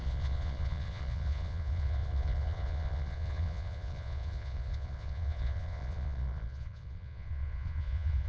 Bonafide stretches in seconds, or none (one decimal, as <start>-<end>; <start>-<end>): none